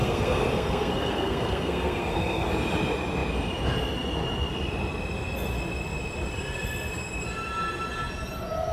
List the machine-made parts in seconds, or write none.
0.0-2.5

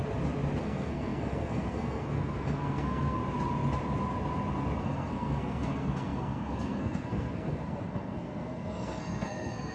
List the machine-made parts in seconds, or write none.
0.6-3.2; 4.8-9.7